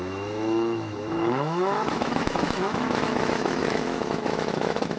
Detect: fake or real fake